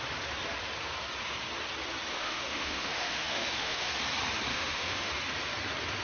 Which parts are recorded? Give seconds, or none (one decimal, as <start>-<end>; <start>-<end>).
0.0-2.1; 3.9-4.5; 5.1-6.0